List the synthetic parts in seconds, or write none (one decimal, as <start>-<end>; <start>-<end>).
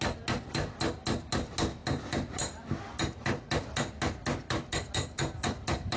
none